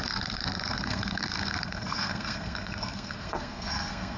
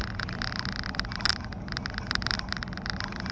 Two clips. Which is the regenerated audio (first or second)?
first